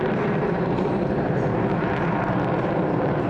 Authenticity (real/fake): fake